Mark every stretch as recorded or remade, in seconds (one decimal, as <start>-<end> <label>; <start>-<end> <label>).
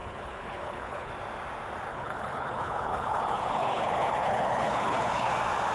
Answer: 0.0-1.1 remade; 1.1-1.9 recorded; 1.9-5.3 remade; 5.3-5.7 recorded